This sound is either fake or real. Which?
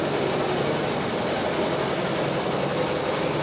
real